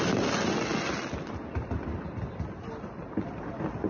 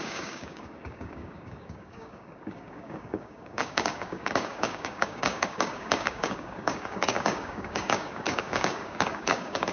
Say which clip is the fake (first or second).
second